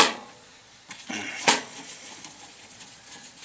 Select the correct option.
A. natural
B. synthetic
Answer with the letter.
B